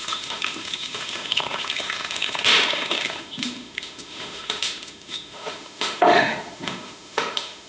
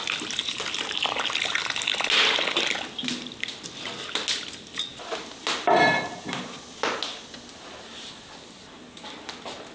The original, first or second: second